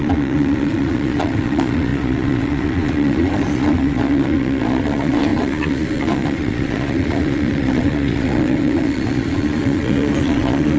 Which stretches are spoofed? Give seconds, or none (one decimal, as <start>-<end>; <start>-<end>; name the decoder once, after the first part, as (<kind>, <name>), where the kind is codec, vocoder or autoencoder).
0.0-10.8 (vocoder, Vocos)